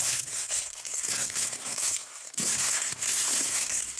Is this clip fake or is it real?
fake